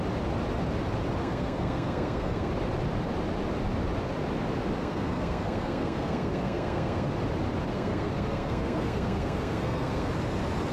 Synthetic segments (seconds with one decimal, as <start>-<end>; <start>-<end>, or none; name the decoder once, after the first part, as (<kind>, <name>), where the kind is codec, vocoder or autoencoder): 1.2-2.5 (codec, SNAC); 4.8-7.1; 7.7-10.1